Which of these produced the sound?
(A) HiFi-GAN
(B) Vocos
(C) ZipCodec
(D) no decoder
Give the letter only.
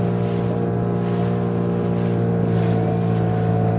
D